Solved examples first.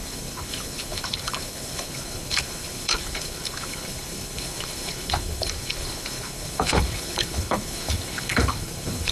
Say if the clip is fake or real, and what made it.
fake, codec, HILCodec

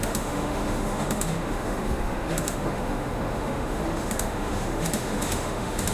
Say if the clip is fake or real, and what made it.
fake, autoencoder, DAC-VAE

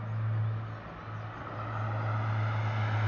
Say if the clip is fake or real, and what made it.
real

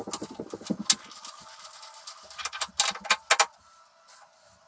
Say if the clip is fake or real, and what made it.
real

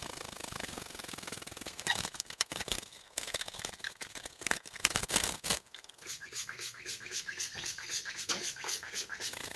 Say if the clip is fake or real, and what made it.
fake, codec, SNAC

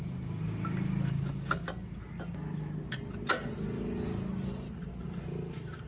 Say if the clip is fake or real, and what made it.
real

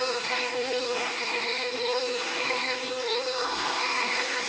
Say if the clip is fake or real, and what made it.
fake, codec, SNAC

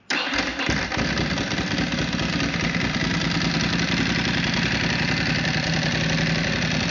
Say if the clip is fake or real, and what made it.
real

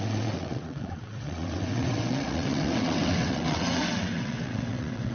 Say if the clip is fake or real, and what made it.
fake, vocoder, WaveNeXt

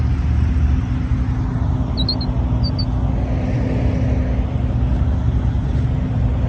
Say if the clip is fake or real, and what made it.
real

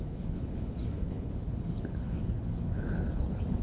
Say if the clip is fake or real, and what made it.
fake, codec, HILCodec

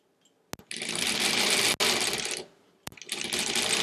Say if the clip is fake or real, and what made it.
real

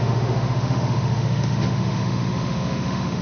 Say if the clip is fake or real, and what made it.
fake, autoencoder, DAC-VAE